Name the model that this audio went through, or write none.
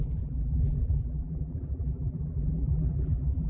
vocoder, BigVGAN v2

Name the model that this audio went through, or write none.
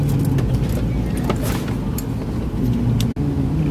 none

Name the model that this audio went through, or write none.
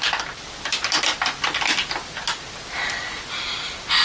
none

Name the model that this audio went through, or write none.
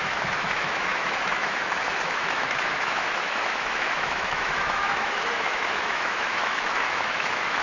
autoencoder, DAC-VAE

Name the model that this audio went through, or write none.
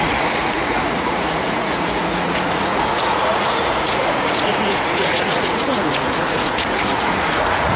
vocoder, Vocos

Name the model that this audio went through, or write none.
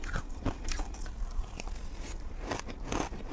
none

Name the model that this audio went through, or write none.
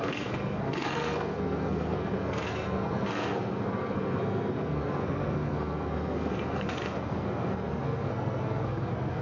codec, SNAC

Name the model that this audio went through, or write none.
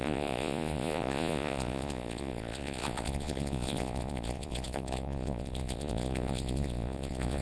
vocoder, Vocos